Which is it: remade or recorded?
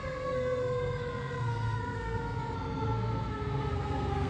remade